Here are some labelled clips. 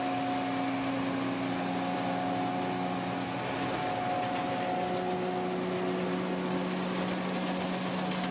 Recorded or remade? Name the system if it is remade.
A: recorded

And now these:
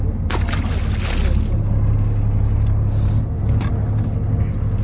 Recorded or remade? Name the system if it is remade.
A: recorded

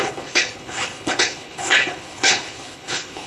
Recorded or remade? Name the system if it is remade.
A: remade, codec, HILCodec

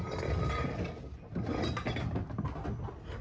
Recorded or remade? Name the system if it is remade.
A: recorded